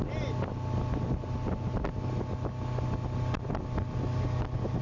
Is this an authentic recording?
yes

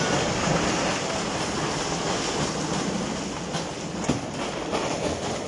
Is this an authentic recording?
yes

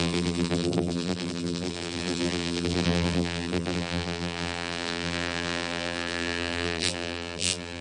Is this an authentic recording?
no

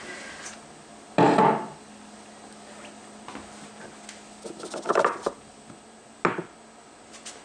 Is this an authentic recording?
yes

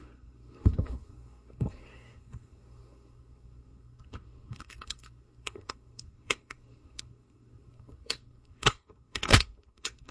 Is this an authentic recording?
no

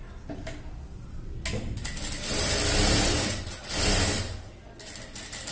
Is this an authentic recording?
yes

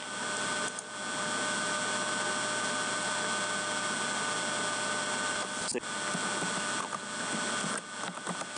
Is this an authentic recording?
yes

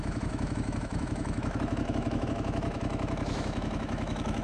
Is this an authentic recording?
no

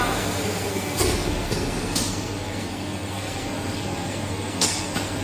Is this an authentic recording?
no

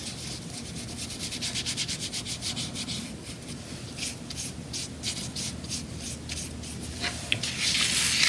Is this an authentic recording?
yes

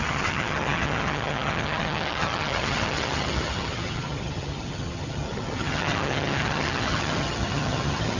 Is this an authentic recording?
no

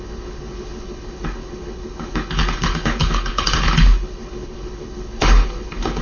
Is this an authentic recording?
no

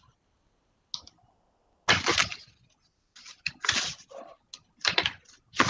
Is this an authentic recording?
yes